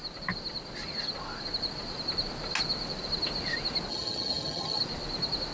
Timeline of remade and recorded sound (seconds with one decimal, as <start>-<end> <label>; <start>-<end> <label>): 0.0-3.9 recorded; 3.9-4.8 remade; 4.8-5.5 recorded